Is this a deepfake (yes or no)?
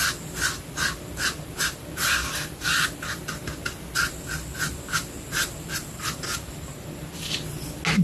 no